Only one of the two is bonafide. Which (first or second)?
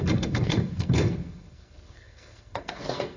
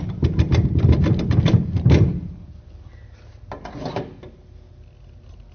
second